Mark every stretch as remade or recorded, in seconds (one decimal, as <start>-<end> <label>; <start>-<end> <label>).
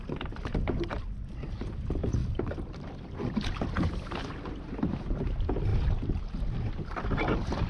0.0-0.9 recorded; 0.9-1.4 remade; 1.4-2.2 recorded; 2.2-4.9 remade; 4.9-7.7 recorded